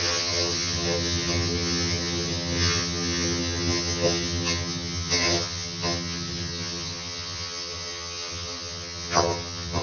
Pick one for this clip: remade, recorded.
remade